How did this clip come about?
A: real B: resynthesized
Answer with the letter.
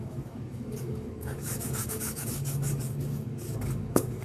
B